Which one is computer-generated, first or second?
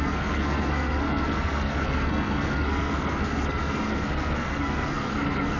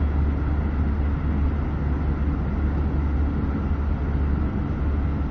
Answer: first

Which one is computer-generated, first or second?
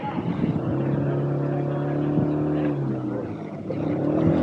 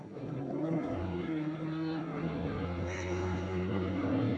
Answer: second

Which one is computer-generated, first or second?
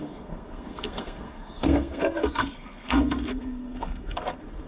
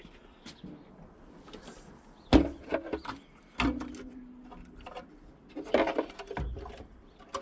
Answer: first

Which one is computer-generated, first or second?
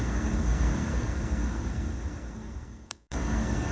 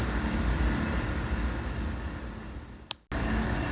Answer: first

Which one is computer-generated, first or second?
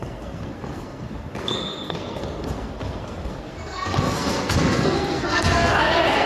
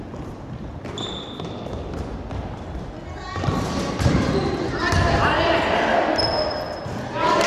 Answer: first